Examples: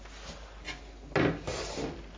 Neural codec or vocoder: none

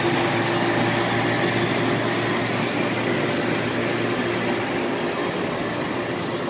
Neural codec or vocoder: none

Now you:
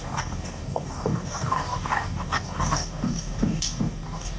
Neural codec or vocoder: codec, DAC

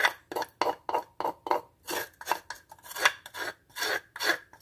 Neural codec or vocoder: none